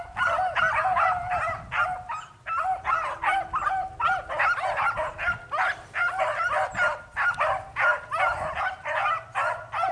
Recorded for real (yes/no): yes